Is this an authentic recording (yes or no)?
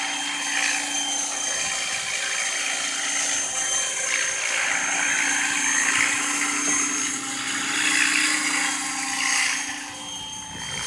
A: yes